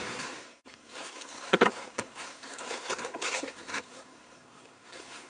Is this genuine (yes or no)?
no